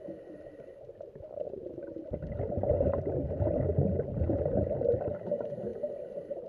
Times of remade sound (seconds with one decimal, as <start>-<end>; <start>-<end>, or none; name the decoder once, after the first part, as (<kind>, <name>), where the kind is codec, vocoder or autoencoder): none